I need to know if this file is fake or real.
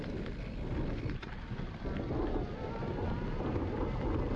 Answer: real